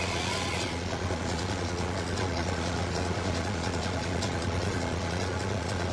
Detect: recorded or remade remade